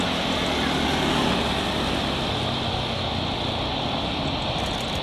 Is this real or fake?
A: real